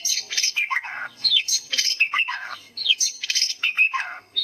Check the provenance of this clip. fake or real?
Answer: fake